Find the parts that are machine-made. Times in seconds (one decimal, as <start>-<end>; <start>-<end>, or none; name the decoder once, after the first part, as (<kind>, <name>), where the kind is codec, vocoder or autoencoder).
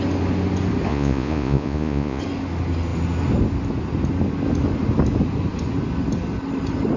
0.9-2.2 (vocoder, Vocos)